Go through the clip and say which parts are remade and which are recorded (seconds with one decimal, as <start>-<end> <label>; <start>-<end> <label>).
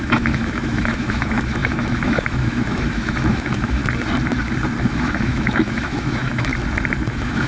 0.0-3.8 remade; 3.8-4.8 recorded; 4.8-6.5 remade; 6.5-7.1 recorded; 7.1-7.5 remade